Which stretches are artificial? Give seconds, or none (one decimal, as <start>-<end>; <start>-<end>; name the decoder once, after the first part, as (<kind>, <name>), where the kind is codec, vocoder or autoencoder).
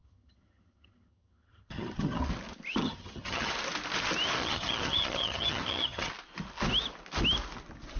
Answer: 0.0-2.2 (vocoder, HiFi-GAN); 2.8-3.5; 4.4-6.1